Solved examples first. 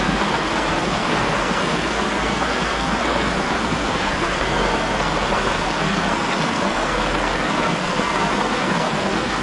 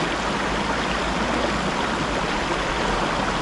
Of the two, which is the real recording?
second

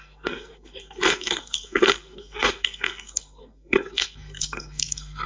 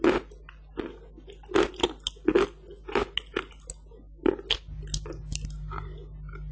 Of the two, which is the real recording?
second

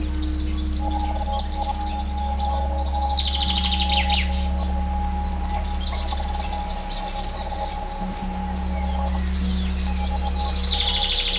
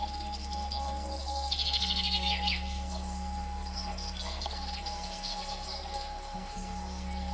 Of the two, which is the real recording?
first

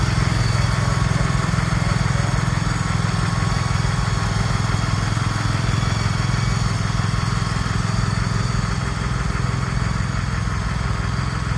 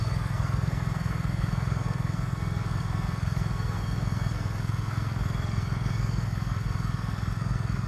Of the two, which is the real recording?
first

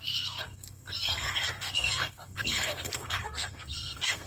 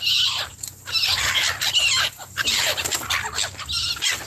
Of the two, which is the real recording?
second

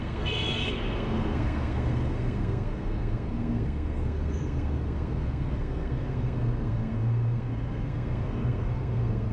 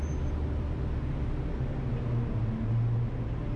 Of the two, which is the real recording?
second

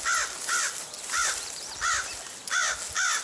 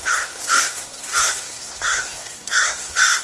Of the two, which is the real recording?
first